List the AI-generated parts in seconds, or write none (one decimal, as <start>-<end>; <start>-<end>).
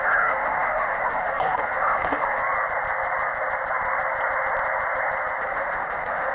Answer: 0.0-2.4; 5.4-6.3